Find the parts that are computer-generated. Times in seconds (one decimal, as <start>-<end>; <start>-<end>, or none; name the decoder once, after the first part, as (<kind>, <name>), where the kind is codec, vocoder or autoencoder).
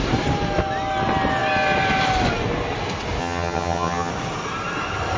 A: 3.2-4.1 (vocoder, HiFi-GAN)